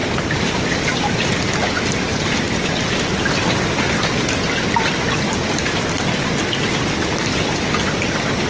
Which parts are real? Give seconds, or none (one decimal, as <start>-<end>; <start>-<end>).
0.0-8.5